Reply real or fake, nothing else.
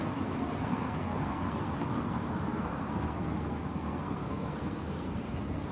fake